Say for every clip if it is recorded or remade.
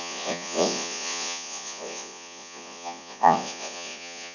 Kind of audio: remade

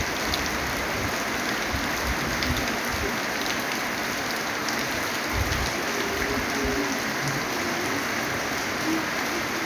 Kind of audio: recorded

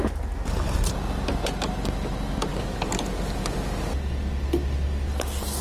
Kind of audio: recorded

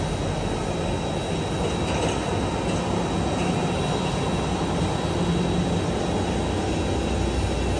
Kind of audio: recorded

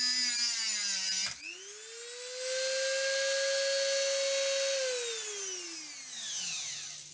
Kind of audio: recorded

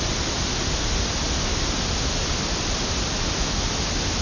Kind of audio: recorded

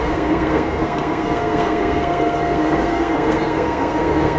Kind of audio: remade